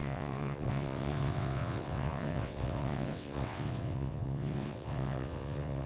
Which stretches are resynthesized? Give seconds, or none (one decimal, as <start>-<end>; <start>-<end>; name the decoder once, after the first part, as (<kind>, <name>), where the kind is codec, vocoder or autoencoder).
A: 0.0-5.9 (vocoder, WaveNeXt)